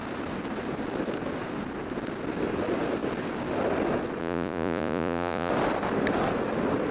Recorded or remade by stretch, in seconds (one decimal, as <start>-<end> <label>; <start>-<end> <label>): 0.0-4.2 recorded; 4.2-5.5 remade; 5.5-6.9 recorded